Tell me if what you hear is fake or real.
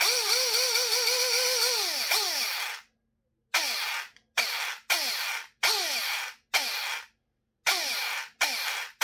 real